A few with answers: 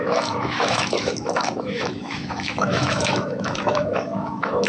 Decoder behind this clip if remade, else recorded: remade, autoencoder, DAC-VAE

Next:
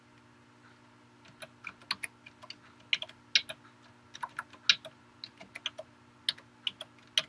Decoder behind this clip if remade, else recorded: recorded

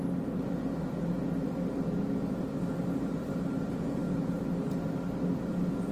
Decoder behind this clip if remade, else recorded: recorded